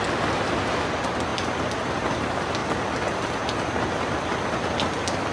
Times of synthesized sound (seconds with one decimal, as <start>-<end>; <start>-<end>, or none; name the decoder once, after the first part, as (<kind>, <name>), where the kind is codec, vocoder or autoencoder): none